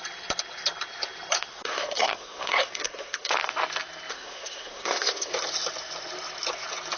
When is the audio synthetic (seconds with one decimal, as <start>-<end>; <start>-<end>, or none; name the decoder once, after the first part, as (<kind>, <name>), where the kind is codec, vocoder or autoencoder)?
1.5-3.3 (codec, SNAC); 4.1-5.3